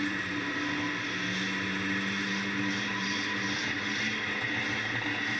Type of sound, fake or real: real